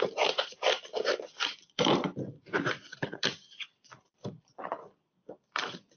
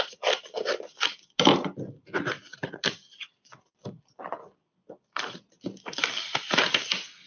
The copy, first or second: first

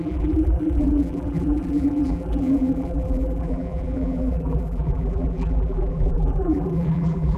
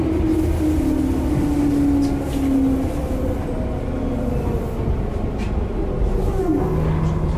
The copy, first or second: first